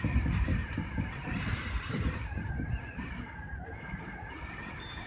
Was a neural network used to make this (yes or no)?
yes